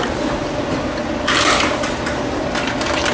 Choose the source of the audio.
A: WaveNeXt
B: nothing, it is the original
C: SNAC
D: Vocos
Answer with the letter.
B